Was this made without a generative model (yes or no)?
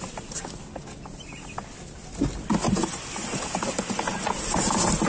yes